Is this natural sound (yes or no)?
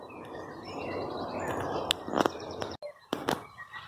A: yes